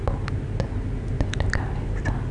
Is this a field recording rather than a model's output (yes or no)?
yes